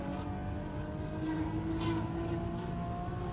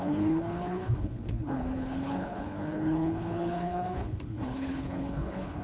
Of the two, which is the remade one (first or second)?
second